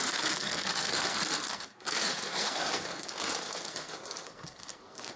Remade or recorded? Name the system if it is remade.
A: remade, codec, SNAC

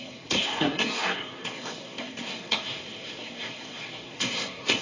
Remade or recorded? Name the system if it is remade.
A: remade, codec, SNAC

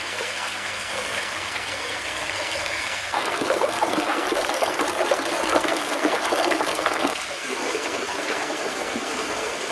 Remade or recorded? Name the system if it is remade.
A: remade, codec, SNAC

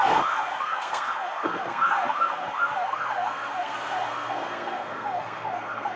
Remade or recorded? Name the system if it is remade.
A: remade, codec, SNAC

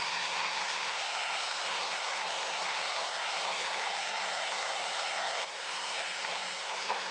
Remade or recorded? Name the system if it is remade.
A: remade, codec, SNAC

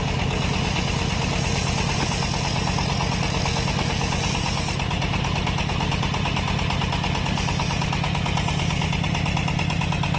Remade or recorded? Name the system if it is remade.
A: recorded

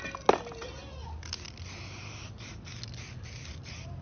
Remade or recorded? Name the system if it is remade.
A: recorded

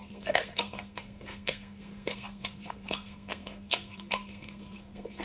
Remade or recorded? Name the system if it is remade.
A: remade, codec, SNAC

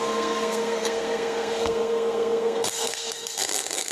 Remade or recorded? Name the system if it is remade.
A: remade, codec, SNAC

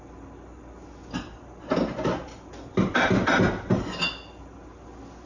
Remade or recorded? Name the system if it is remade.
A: recorded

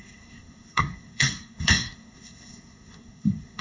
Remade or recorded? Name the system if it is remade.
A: remade, codec, SNAC